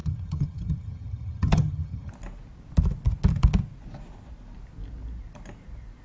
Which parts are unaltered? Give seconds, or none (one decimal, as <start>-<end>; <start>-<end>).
2.1-6.0